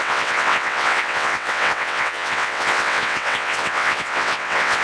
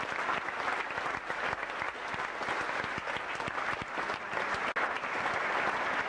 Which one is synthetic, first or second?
first